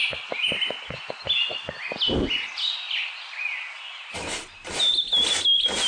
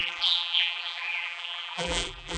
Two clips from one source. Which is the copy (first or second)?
second